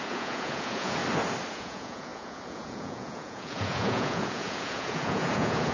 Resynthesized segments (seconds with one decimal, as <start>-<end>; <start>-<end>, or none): 0.0-1.0; 1.5-5.7